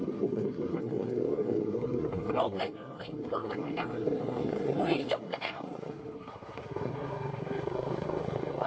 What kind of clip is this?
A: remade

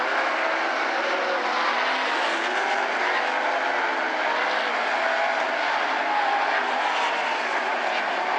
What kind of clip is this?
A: recorded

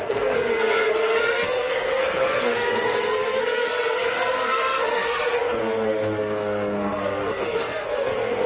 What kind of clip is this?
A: remade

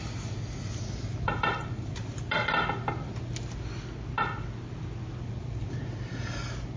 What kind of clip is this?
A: recorded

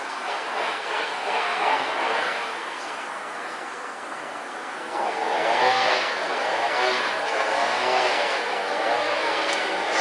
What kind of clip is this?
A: remade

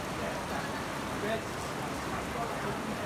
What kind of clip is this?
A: recorded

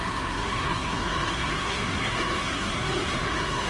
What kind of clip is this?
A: remade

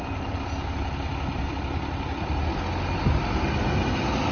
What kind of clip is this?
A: recorded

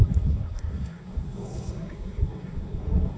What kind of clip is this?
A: remade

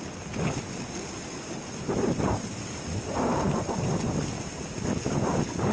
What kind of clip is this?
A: recorded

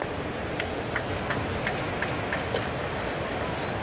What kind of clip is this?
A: recorded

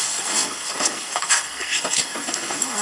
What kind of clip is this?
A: remade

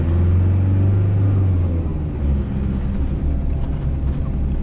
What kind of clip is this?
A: recorded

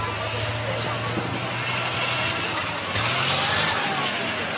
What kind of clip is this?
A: recorded